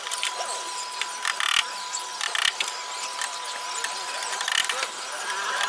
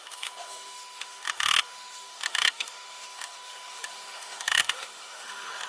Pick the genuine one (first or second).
first